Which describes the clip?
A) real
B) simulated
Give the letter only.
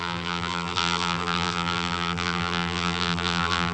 B